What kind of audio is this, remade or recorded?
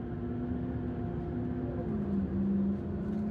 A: recorded